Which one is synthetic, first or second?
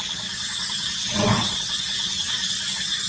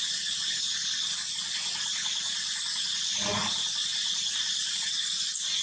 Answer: first